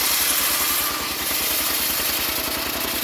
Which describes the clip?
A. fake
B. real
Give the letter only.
B